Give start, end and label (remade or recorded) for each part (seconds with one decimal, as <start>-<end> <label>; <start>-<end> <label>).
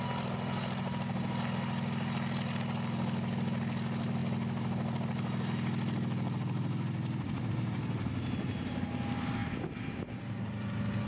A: 0.0-11.1 recorded